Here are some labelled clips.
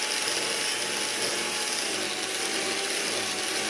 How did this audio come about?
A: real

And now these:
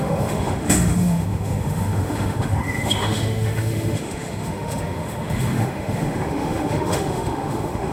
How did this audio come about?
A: fake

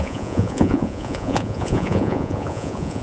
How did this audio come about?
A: fake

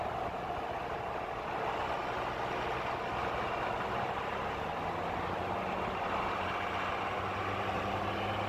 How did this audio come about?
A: real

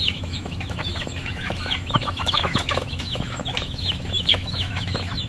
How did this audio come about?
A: fake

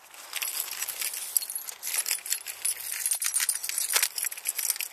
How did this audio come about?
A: real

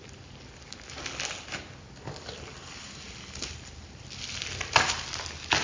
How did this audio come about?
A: real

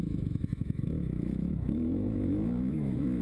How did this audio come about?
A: fake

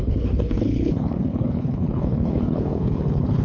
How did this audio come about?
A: fake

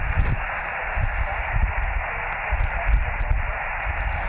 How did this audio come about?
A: real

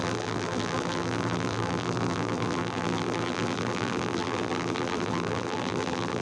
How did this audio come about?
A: fake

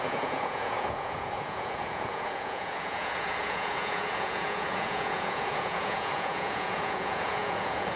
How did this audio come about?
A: fake